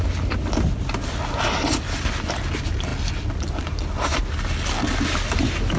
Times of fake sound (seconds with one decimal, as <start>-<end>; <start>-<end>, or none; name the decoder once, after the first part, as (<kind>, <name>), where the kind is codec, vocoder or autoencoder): none